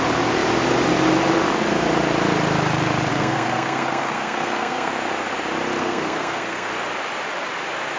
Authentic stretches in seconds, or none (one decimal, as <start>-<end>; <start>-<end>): 0.0-3.1; 4.9-5.8; 6.7-8.0